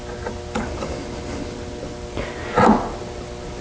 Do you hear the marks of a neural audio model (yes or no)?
no